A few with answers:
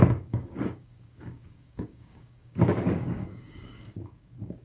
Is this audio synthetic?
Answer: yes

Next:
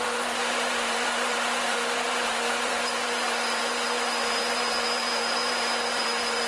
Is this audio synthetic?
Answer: yes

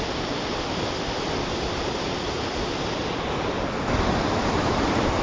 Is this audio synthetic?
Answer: no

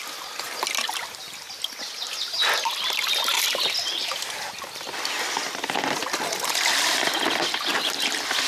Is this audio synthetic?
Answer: no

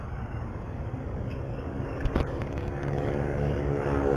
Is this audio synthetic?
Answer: yes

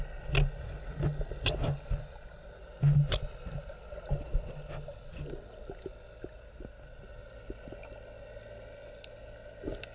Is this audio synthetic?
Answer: no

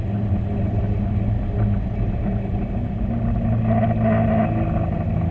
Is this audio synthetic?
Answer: no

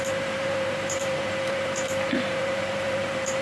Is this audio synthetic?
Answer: yes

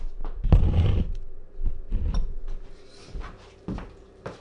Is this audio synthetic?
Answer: no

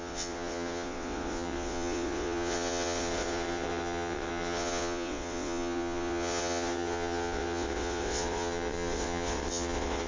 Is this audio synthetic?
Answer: yes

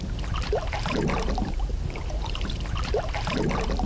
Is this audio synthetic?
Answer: yes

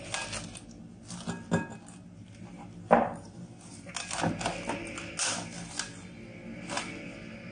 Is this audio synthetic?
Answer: no